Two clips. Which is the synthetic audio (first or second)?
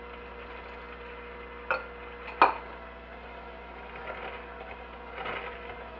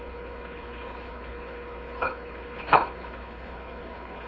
second